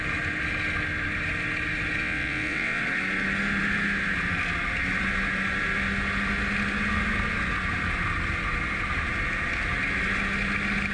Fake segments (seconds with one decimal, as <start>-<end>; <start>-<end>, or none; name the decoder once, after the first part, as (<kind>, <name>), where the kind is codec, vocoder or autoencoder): 2.0-2.8 (vocoder, WaveNeXt)